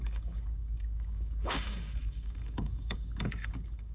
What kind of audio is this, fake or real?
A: fake